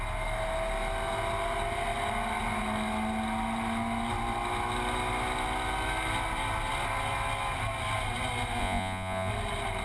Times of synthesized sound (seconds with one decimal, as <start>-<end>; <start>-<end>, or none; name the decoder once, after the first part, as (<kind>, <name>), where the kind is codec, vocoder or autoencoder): 8.6-9.3 (vocoder, Vocos)